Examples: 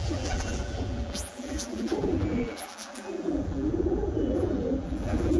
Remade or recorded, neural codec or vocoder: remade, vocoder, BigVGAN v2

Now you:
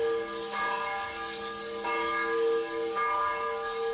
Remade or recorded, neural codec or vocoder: remade, codec, DAC